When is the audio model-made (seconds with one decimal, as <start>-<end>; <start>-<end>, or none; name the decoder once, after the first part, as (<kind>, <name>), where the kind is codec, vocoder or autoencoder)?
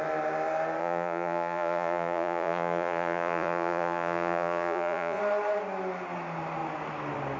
0.8-5.2 (vocoder, Vocos)